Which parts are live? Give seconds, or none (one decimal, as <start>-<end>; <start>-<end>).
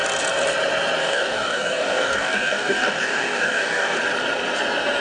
0.0-1.0; 4.0-5.0